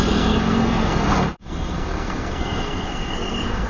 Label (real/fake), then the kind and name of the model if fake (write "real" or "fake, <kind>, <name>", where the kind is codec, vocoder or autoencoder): fake, codec, SNAC